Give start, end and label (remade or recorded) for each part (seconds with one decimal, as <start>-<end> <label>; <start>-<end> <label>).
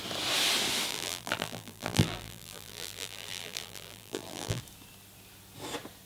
0.0-0.9 recorded; 0.9-4.6 remade; 4.6-6.1 recorded